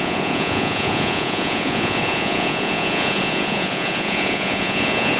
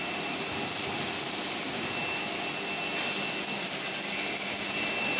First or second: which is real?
second